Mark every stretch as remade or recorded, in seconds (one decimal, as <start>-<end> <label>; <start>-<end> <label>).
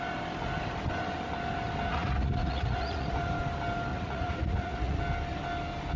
0.0-1.9 recorded; 1.9-3.1 remade; 3.1-3.9 recorded; 3.9-5.0 remade; 5.0-6.0 recorded